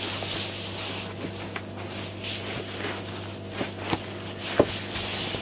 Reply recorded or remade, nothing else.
recorded